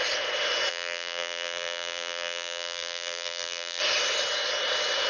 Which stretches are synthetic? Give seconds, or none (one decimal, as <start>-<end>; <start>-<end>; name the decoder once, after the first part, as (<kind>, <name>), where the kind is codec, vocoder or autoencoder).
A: 0.7-3.8 (vocoder, BigVGAN v2)